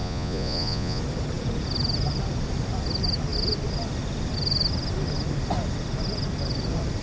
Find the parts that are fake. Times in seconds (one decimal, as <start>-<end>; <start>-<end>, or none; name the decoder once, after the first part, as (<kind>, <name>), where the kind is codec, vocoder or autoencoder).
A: 0.0-1.0 (vocoder, Vocos)